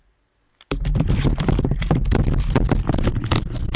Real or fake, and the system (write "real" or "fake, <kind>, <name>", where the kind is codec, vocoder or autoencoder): real